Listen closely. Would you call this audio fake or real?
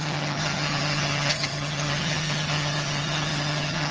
fake